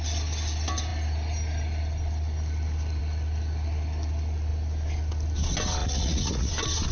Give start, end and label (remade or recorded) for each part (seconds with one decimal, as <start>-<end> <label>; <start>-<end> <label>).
0.0-5.8 recorded; 5.8-6.5 remade; 6.5-6.9 recorded